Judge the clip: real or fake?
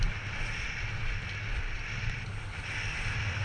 real